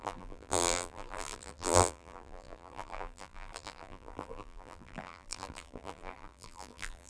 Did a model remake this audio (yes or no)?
yes